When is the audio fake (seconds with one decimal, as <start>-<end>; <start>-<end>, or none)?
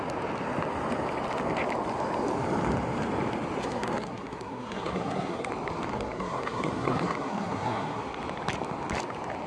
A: 3.6-5.5; 5.9-8.0